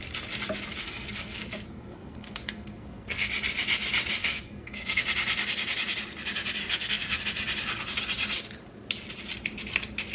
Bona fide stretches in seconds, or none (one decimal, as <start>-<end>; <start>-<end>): 0.0-0.8; 3.3-4.2; 5.0-6.6; 7.2-10.1